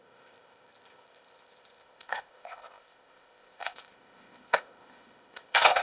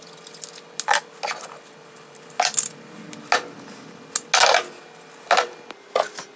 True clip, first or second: second